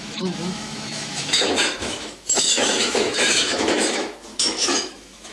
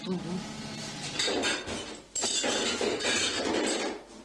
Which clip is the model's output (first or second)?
first